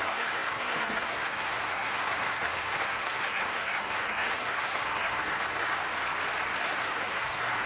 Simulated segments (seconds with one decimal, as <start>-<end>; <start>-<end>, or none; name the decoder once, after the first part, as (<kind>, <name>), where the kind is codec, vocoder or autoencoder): 0.0-5.8 (codec, SNAC); 6.6-7.7